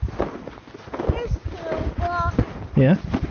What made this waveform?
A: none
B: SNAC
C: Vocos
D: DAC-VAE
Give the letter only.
A